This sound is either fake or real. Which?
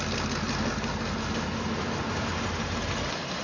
real